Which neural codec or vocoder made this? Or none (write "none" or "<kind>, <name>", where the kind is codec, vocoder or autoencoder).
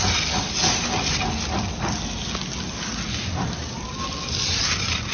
none